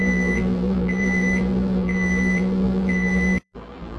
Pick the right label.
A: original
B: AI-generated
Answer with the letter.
B